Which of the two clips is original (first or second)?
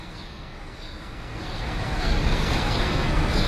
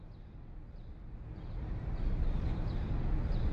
second